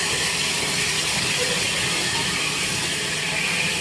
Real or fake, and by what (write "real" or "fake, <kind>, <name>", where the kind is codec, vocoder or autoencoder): real